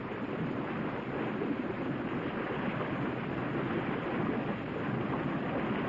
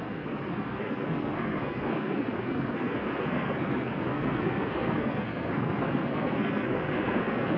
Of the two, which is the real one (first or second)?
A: first